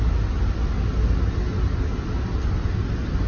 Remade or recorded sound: recorded